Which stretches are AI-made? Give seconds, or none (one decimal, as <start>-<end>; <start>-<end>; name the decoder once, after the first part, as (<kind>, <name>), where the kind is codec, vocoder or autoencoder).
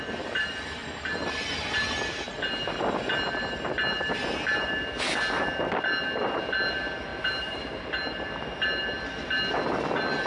none